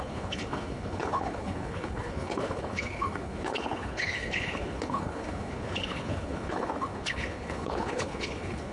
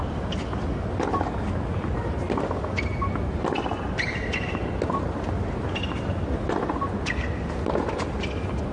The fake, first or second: first